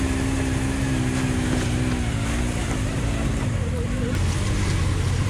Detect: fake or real real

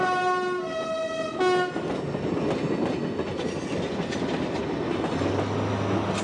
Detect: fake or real real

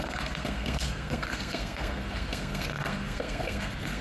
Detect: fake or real fake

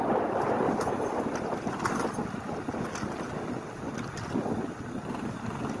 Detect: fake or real real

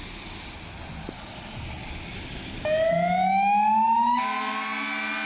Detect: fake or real real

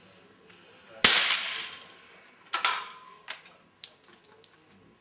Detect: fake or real real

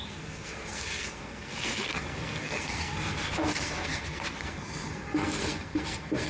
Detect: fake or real fake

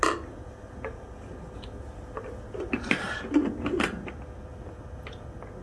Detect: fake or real real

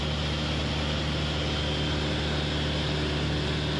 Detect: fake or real real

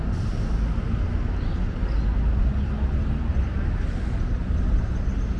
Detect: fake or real real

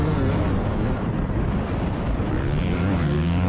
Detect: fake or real real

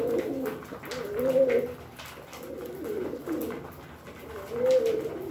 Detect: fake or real real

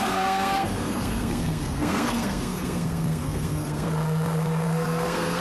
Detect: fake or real fake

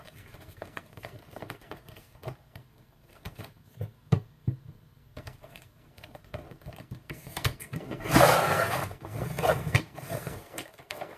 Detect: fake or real fake